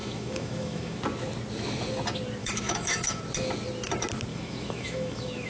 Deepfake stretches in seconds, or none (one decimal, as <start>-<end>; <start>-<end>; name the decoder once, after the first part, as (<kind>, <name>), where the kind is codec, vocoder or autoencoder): 0.0-1.0 (autoencoder, DAC-VAE); 2.4-3.2; 4.3-5.5